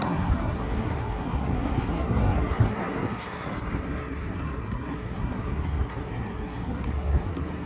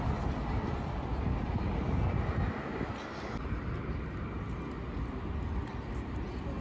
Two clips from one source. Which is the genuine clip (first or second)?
second